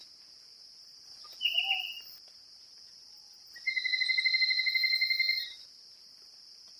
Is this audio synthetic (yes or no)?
no